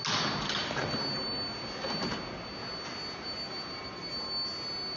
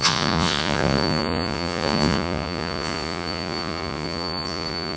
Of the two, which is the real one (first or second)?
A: first